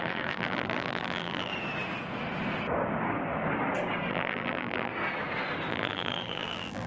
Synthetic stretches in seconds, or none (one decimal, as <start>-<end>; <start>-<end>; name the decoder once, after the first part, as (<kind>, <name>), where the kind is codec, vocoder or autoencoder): 0.0-1.5 (vocoder, BigVGAN v2); 4.1-4.9; 5.7-6.9